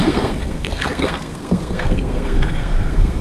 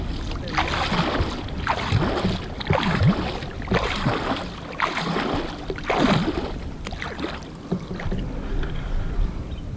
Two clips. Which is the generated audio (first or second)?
first